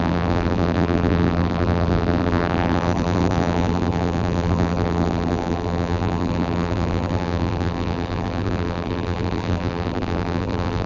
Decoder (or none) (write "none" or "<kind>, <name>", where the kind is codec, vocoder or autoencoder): vocoder, BigVGAN v2